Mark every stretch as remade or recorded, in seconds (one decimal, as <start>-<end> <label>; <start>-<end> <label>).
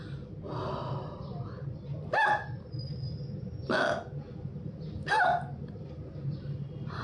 0.0-7.0 recorded